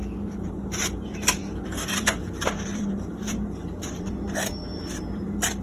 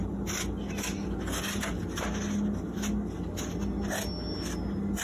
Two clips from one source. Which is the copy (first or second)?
first